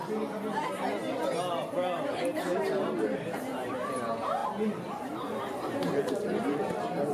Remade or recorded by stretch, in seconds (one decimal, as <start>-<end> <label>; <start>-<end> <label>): 0.0-2.1 recorded; 2.1-3.7 remade; 3.7-7.1 recorded